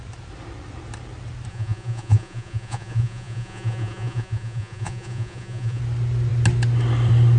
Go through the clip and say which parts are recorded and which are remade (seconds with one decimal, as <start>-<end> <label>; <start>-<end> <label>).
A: 0.0-1.5 recorded; 1.5-5.8 remade; 5.8-7.4 recorded